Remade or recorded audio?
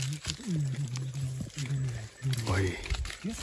recorded